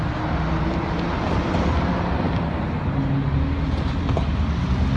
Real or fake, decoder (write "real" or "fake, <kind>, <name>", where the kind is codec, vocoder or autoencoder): real